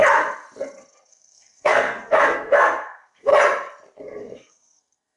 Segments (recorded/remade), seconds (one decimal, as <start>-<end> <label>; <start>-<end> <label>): 0.0-1.1 recorded; 1.1-3.3 remade; 3.3-4.0 recorded; 4.0-5.2 remade